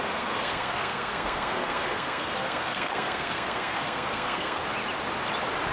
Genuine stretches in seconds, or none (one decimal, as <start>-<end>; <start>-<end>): 4.6-5.7